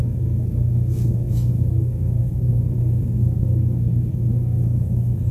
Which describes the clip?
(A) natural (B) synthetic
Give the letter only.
B